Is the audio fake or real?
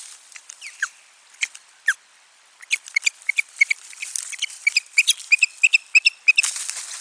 real